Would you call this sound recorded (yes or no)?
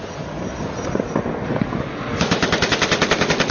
yes